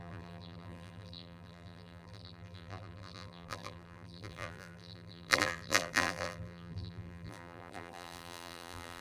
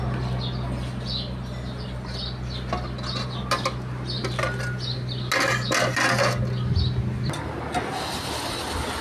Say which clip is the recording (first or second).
second